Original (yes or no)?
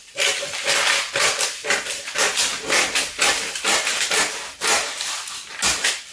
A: yes